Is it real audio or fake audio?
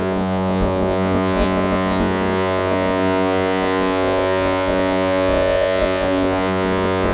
fake